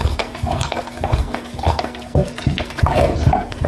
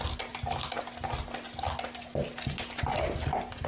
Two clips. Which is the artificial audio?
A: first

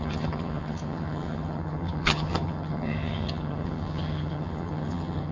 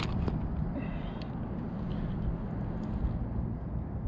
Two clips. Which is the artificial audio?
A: first